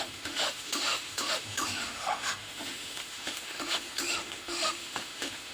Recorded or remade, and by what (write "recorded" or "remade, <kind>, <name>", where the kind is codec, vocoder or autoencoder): remade, autoencoder, DAC-VAE